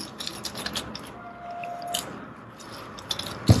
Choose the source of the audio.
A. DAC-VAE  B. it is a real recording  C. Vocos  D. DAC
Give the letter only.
B